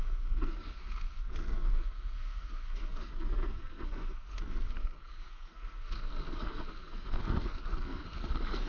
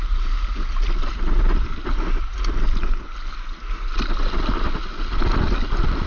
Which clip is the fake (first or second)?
first